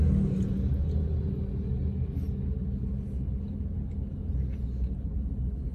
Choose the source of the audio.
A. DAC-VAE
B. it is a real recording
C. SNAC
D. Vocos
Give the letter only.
B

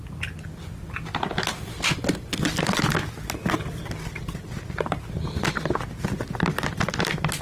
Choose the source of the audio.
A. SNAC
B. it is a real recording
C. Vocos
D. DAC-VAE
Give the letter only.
B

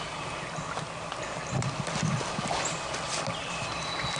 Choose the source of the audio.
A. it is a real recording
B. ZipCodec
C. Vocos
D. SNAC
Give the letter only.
A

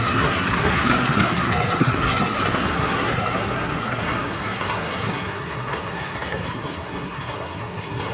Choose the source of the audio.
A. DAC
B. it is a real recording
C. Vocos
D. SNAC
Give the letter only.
D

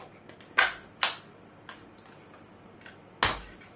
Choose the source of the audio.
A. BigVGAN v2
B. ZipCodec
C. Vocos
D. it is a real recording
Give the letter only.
D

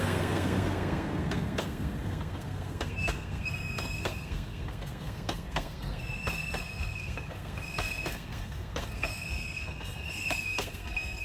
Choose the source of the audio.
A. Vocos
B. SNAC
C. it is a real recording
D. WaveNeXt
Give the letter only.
B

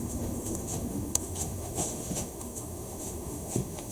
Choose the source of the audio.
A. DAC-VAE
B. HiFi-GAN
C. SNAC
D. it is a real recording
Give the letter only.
A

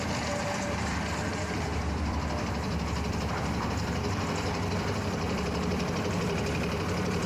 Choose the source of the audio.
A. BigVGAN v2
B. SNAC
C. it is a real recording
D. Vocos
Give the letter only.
A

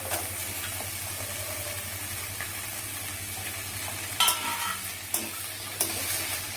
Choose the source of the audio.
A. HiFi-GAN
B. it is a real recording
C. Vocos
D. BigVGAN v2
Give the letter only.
B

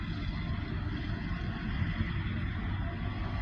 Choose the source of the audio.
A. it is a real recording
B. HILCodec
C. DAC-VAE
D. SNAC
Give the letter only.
A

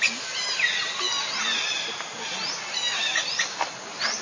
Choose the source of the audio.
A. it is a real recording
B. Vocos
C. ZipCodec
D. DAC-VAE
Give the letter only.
A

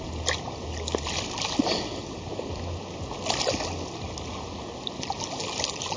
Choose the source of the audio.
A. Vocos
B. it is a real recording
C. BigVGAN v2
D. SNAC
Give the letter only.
B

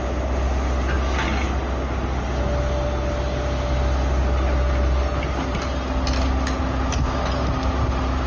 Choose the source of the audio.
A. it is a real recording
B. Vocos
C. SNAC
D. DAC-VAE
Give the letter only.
A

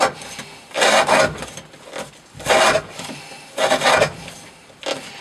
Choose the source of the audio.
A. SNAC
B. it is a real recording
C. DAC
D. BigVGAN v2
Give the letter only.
B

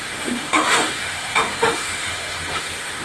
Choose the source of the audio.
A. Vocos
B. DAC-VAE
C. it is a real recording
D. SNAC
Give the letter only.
B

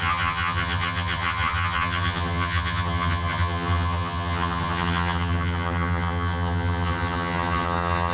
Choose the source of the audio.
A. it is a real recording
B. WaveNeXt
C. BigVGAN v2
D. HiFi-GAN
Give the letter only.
D